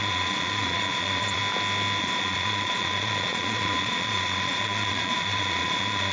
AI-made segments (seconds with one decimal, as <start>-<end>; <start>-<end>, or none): 0.0-1.4; 2.0-6.1